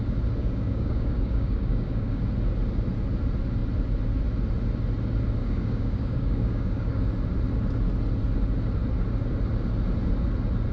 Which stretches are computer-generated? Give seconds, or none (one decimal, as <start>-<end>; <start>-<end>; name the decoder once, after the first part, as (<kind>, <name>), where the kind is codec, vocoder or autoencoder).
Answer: 0.4-2.2 (codec, DAC); 5.4-7.1